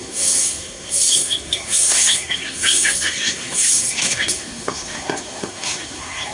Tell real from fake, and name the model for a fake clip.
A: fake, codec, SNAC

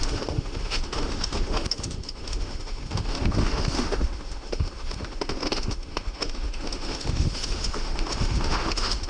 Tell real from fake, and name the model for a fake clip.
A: fake, autoencoder, DAC-VAE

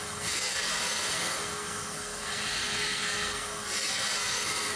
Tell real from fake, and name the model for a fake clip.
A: fake, codec, SNAC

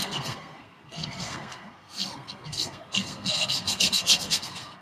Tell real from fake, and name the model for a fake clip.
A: fake, codec, SNAC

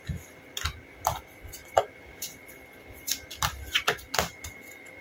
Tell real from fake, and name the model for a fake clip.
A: fake, vocoder, BigVGAN v2